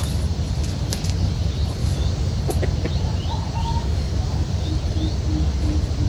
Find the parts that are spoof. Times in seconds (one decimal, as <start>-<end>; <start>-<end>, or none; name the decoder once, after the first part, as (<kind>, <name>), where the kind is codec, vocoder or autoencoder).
1.8-2.4 (codec, DAC); 3.6-4.7